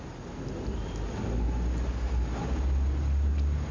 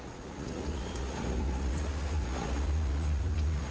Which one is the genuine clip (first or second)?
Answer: first